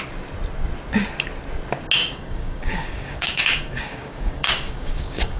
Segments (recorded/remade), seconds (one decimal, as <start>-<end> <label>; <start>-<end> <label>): 0.0-2.0 recorded; 2.0-5.4 remade